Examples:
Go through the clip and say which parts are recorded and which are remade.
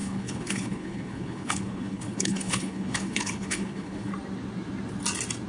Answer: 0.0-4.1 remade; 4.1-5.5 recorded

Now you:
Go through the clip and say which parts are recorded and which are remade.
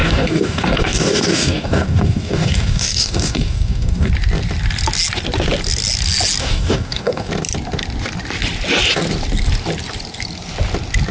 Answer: 0.0-4.1 remade; 4.1-6.4 recorded; 6.4-7.3 remade; 7.3-11.1 recorded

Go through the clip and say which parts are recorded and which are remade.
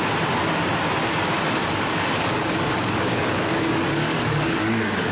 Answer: 0.0-1.6 recorded; 1.6-5.1 remade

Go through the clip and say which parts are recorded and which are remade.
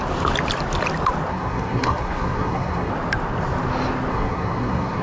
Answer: 0.0-1.3 recorded; 1.3-2.9 remade; 2.9-4.1 recorded; 4.1-5.0 remade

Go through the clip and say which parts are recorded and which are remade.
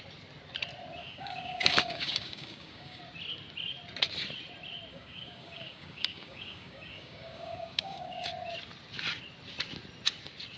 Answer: 0.0-1.0 recorded; 1.0-3.0 remade; 3.0-4.9 recorded; 4.9-8.3 remade; 8.3-10.6 recorded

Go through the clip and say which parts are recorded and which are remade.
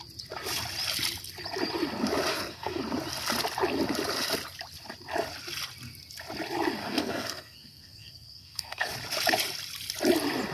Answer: 0.0-2.3 recorded; 2.3-2.8 remade; 2.8-6.8 recorded; 6.8-8.9 remade; 8.9-10.5 recorded